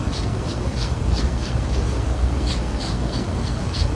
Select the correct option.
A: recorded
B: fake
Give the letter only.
B